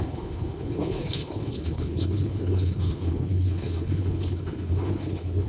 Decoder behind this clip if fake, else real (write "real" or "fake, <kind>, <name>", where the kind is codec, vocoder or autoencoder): fake, codec, HILCodec